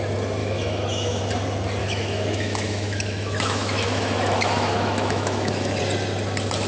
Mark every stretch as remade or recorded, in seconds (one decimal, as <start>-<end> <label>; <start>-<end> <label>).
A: 0.0-0.4 recorded; 0.4-1.2 remade; 1.2-1.8 recorded; 1.8-5.8 remade; 5.8-6.7 recorded